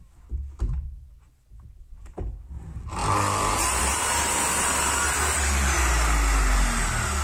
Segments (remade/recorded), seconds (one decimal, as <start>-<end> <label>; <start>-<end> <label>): 0.0-7.2 recorded